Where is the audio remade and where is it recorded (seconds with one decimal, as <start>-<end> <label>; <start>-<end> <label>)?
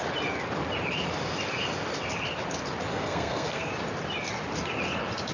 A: 0.0-2.9 recorded; 2.9-3.7 remade; 3.7-5.3 recorded